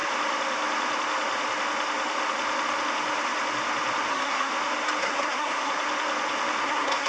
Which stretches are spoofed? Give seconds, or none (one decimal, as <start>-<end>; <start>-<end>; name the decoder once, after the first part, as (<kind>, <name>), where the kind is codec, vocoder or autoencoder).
4.1-4.5 (codec, SNAC); 5.0-5.7; 6.6-7.1